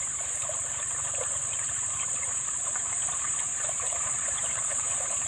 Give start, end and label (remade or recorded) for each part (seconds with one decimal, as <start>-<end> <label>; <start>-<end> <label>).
0.0-0.4 remade; 0.4-2.0 recorded; 2.0-5.3 remade